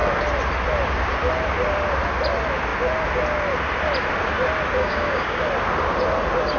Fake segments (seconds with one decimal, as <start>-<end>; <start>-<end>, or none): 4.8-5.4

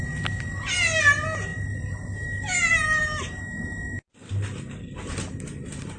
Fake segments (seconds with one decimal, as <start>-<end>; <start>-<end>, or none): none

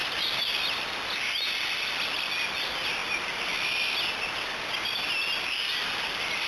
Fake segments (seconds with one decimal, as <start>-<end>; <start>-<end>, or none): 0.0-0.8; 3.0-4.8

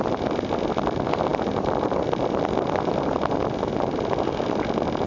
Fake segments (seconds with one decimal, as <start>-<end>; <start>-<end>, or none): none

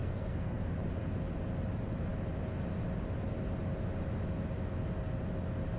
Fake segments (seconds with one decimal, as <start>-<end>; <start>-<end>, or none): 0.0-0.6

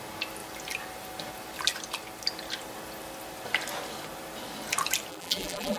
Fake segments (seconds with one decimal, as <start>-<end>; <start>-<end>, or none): 5.1-5.8

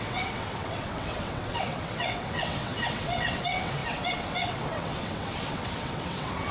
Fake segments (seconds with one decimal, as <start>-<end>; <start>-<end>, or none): 0.0-6.5

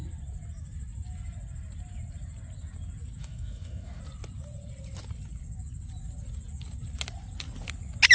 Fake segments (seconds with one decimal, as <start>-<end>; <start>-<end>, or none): 3.2-4.0